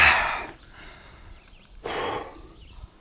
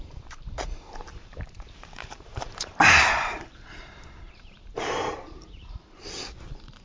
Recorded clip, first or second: first